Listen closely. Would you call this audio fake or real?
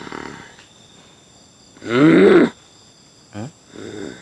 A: real